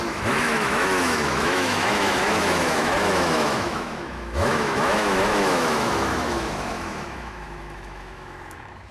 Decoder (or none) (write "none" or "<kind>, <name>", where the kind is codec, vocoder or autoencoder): autoencoder, DAC-VAE